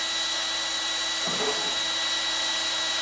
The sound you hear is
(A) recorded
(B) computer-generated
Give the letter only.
A